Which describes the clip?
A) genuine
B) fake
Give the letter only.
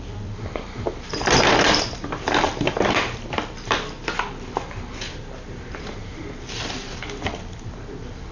B